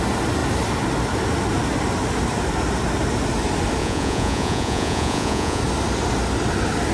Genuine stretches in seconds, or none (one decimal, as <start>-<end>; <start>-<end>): 0.0-3.8; 5.6-6.9